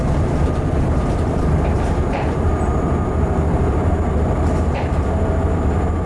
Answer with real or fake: fake